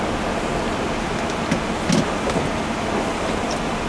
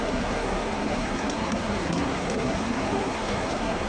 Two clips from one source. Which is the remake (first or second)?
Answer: second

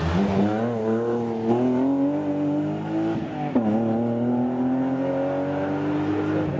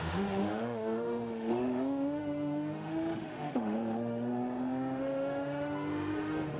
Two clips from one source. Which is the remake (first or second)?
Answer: second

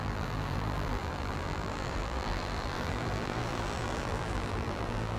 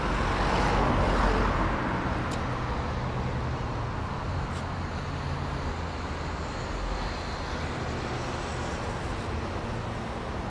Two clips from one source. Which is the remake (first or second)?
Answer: first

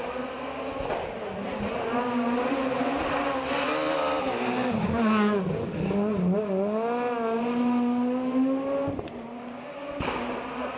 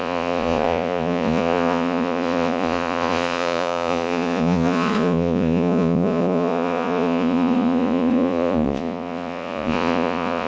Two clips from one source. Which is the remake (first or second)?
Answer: second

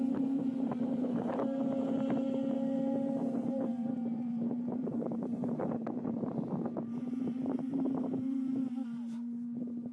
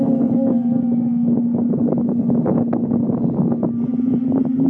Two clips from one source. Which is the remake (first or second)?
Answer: first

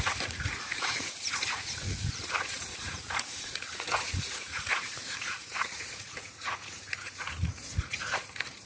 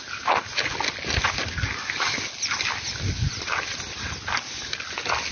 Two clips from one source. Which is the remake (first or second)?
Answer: first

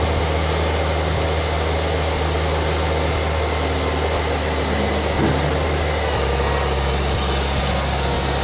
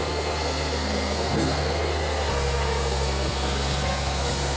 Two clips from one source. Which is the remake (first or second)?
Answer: second